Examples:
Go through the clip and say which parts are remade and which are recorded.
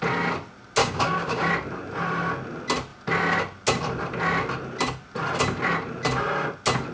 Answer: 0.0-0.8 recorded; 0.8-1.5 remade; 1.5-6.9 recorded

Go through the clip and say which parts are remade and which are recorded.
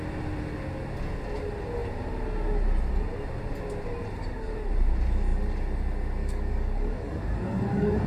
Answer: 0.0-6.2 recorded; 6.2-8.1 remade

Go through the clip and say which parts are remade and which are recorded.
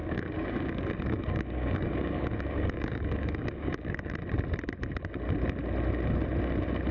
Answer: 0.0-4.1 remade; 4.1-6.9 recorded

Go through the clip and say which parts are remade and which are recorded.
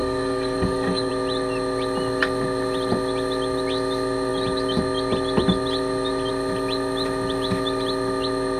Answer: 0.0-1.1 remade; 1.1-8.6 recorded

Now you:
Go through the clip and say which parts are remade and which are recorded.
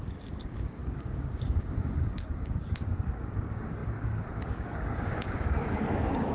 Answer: 0.0-6.3 remade